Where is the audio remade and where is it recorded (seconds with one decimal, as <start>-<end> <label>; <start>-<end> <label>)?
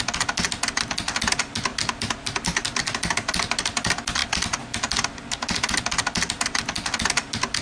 0.0-7.6 recorded